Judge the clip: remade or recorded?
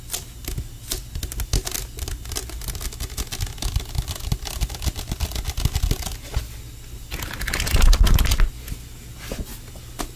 recorded